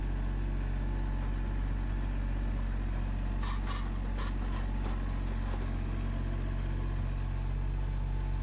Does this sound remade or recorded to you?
recorded